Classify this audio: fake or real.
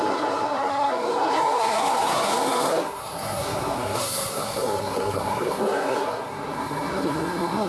fake